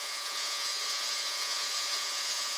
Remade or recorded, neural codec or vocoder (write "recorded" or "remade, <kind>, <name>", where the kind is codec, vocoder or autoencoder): remade, vocoder, Vocos